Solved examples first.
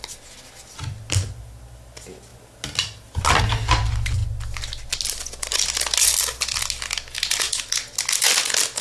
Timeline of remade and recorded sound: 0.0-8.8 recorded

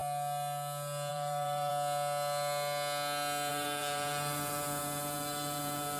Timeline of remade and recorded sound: 0.0-1.1 recorded; 1.1-1.7 remade; 1.7-3.5 recorded; 3.5-6.0 remade

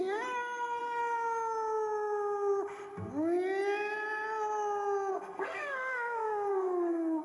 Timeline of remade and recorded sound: 0.0-0.8 remade; 0.8-5.1 recorded; 5.1-7.2 remade

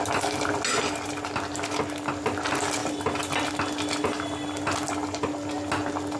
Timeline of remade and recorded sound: 0.0-6.2 recorded

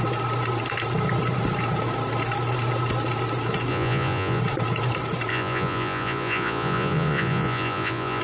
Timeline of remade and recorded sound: 0.0-3.7 recorded; 3.7-4.4 remade; 4.4-5.3 recorded; 5.3-8.2 remade

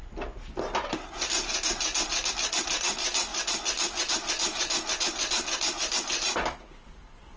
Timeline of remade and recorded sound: 0.0-7.4 recorded

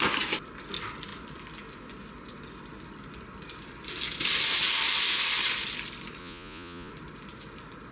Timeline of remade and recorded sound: 0.0-6.2 recorded; 6.2-6.9 remade; 6.9-7.9 recorded